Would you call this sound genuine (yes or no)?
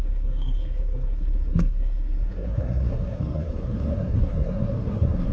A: no